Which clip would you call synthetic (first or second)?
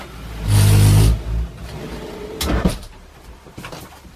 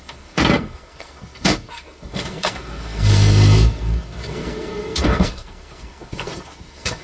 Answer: second